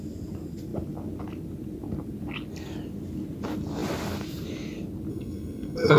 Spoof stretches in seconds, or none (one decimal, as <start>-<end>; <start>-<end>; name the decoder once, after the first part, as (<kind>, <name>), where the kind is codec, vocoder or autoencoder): 5.1-6.0 (codec, SNAC)